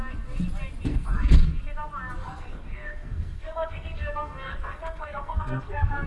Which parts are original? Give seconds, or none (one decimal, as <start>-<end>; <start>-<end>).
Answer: 0.0-0.9; 1.6-2.2